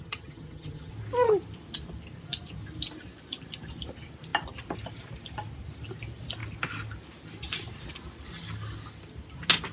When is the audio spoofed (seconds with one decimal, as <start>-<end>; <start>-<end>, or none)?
0.0-0.9